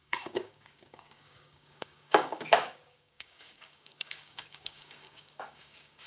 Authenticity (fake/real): fake